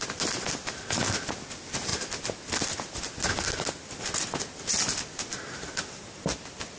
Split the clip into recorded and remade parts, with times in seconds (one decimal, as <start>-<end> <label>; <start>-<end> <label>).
0.0-6.8 recorded